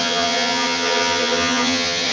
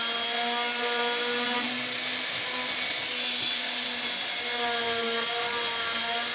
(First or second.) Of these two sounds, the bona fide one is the second